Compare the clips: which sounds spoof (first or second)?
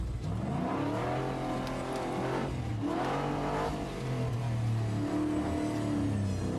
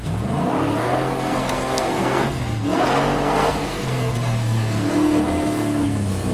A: second